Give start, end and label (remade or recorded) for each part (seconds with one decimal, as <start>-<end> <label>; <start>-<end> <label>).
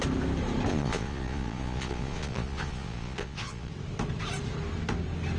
0.0-0.7 recorded; 0.7-3.7 remade; 3.7-5.4 recorded